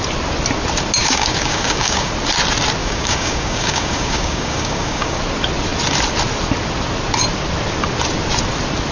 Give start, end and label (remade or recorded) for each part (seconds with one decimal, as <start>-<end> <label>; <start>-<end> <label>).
0.0-1.0 recorded; 1.0-2.1 remade; 2.1-2.8 recorded; 2.8-5.2 remade; 5.2-8.9 recorded